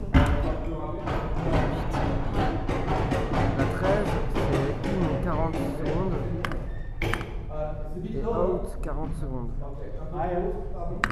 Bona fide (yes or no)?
yes